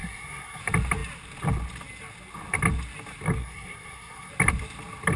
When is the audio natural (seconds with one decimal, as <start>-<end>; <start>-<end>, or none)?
0.6-3.4; 4.3-5.2